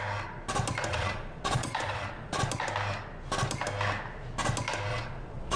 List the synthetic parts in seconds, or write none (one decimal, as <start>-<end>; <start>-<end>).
0.9-2.4; 4.9-5.6